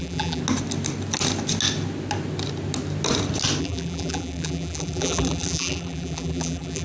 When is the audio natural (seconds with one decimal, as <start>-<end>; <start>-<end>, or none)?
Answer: 0.4-3.6